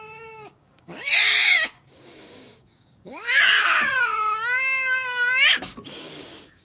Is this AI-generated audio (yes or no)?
yes